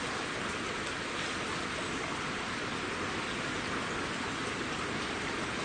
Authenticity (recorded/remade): recorded